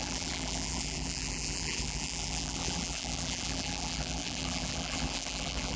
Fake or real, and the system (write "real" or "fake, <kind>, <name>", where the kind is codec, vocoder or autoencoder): fake, vocoder, BigVGAN v2